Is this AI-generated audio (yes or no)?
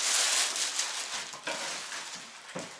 no